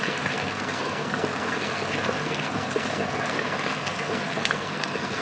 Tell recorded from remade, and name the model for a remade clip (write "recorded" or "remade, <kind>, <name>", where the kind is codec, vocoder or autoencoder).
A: remade, codec, SNAC